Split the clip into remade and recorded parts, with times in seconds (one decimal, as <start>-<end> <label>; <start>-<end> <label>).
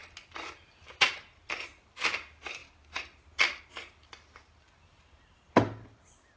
0.0-6.4 recorded